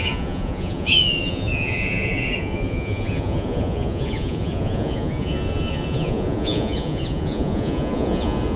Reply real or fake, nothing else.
fake